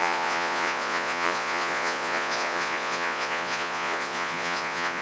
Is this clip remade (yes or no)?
yes